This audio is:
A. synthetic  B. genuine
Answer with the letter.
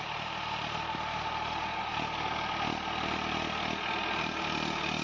B